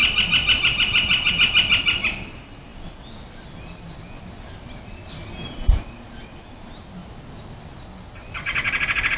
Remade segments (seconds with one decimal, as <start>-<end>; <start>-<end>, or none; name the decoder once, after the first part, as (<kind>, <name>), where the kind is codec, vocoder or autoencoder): none